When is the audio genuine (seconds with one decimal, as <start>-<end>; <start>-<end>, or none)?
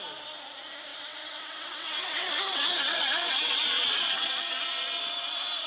0.0-0.9; 4.3-5.7